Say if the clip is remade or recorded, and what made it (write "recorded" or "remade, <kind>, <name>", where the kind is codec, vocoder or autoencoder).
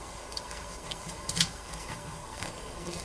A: remade, codec, SNAC